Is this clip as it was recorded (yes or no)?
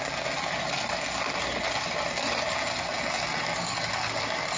yes